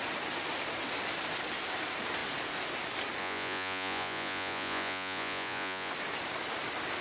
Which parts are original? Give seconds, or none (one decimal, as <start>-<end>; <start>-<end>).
0.0-3.2; 5.9-7.0